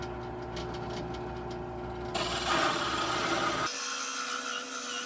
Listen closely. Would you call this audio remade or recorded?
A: recorded